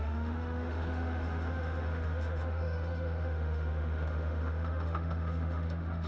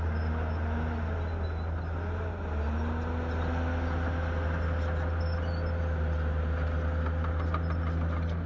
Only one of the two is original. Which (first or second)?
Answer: second